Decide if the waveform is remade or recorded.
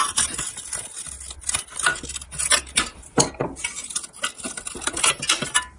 recorded